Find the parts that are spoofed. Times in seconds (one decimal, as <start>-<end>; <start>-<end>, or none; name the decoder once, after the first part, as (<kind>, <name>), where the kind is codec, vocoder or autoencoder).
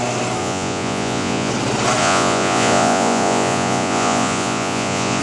0.4-1.5 (vocoder, Vocos); 2.0-5.2